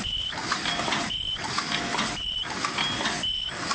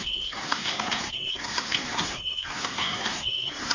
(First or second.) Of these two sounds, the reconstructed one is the second